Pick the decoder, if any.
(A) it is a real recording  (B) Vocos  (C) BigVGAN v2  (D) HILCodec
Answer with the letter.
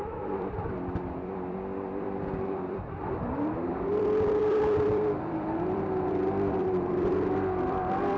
C